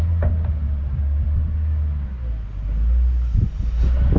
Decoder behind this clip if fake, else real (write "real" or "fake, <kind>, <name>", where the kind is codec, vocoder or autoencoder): real